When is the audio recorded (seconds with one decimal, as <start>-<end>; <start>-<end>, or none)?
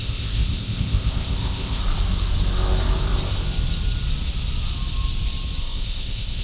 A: 1.8-5.6